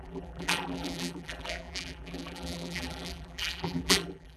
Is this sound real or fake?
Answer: fake